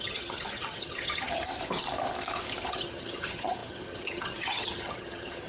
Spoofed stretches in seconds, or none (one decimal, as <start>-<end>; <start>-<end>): 0.0-1.5; 2.7-5.5